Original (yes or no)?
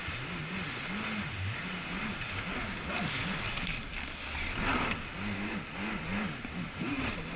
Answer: yes